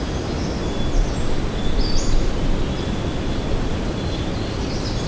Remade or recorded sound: recorded